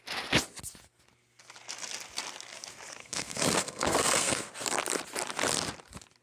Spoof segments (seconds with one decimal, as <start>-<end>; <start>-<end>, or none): 3.0-4.5

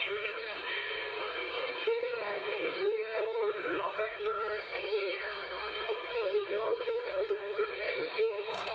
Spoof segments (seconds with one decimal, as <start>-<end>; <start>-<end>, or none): 0.0-0.7; 1.2-8.7